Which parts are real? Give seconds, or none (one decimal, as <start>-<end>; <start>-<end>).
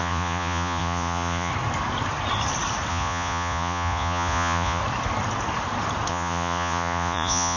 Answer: 1.5-2.9; 4.8-6.1